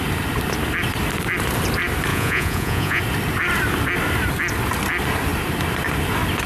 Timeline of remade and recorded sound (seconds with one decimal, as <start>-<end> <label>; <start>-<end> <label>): 0.0-2.1 recorded; 2.1-3.0 remade; 3.0-6.5 recorded